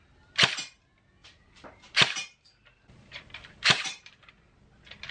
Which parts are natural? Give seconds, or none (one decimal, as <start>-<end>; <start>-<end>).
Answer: 0.0-1.2; 4.3-5.1